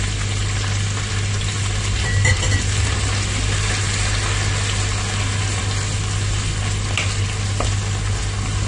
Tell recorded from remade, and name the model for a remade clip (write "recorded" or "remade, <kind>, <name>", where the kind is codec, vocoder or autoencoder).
recorded